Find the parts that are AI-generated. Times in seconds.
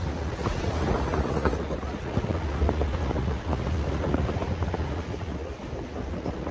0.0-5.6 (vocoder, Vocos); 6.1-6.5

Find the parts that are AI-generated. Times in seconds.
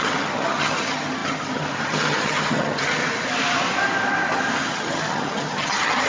0.0-3.0 (vocoder, HiFi-GAN); 4.7-6.1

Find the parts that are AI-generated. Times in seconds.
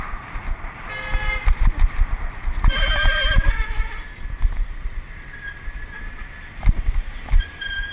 none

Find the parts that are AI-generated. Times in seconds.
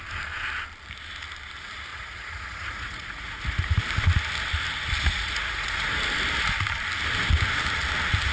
1.9-3.8 (vocoder, Vocos); 5.1-6.0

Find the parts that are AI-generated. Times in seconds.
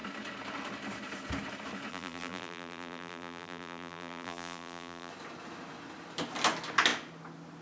1.9-5.1 (vocoder, BigVGAN v2)